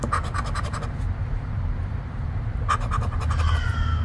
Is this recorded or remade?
recorded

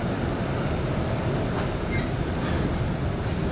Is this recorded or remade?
recorded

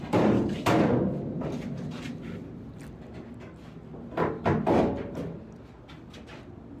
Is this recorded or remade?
recorded